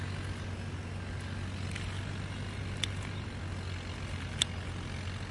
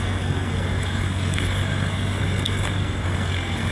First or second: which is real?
first